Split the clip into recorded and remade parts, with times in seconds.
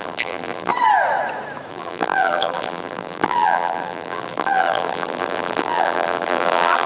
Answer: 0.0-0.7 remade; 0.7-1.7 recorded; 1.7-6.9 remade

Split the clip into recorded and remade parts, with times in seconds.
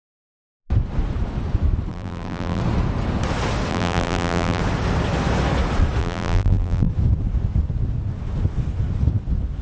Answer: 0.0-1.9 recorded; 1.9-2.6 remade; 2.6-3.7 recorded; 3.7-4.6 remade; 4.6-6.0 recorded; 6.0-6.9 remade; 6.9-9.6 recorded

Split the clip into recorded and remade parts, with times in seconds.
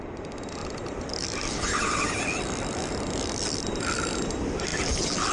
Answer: 0.0-0.6 recorded; 0.6-3.8 remade; 3.8-4.7 recorded; 4.7-5.3 remade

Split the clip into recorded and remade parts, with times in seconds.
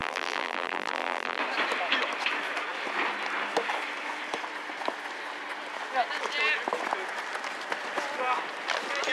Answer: 0.0-1.4 remade; 1.4-9.1 recorded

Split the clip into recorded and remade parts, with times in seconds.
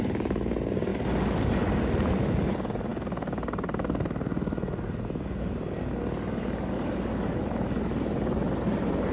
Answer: 0.0-9.1 recorded